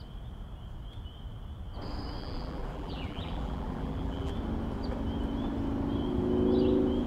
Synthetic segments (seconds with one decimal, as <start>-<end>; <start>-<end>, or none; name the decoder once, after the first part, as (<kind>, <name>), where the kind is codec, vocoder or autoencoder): 2.2-4.3 (vocoder, BigVGAN v2)